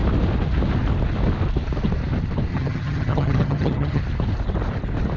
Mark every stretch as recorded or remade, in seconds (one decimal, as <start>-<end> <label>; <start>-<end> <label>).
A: 0.0-2.5 recorded; 2.5-4.0 remade; 4.0-5.2 recorded